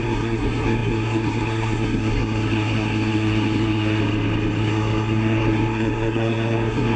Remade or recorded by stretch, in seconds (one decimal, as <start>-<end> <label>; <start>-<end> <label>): 0.0-4.0 remade; 4.0-4.6 recorded; 4.6-7.0 remade